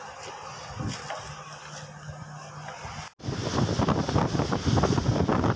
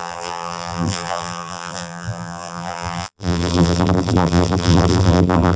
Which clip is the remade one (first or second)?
second